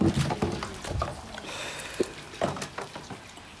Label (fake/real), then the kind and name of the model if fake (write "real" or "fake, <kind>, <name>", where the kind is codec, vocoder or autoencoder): real